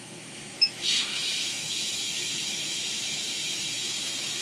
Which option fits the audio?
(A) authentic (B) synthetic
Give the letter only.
B